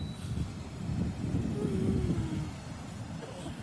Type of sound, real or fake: real